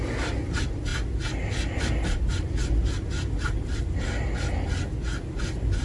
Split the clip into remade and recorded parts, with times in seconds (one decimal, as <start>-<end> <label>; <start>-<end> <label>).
0.0-5.8 recorded